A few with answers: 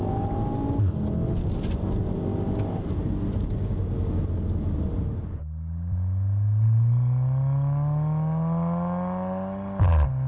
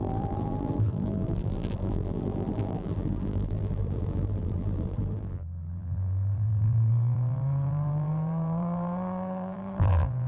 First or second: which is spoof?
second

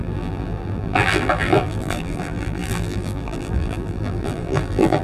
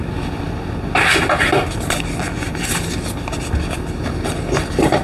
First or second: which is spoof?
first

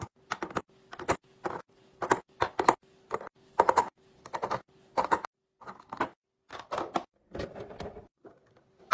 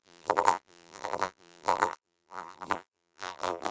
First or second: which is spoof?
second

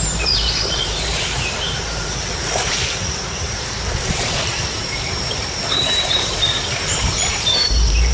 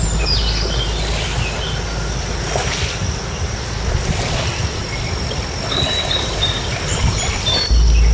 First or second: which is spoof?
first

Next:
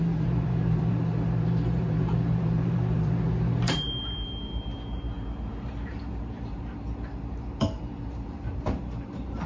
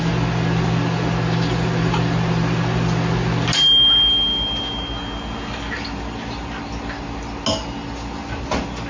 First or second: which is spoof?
first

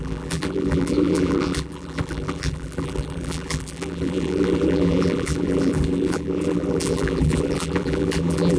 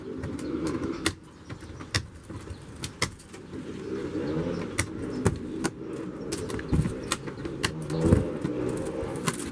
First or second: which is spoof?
first